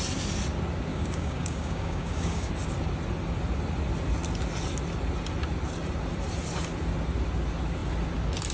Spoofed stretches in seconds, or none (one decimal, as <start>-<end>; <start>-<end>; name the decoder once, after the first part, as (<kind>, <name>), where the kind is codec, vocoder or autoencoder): 0.9-2.5 (codec, DAC)